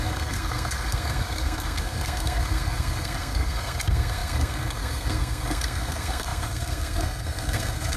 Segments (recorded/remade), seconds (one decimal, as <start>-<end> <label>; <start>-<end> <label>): 0.0-8.0 remade